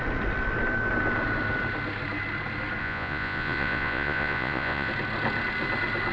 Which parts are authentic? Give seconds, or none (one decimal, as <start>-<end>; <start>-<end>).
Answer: 0.0-2.8; 4.9-6.1